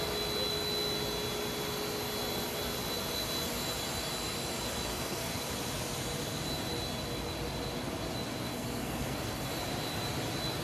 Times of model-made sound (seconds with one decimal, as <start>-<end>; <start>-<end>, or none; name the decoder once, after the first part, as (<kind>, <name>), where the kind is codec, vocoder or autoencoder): 4.9-5.5 (codec, SNAC); 8.5-9.5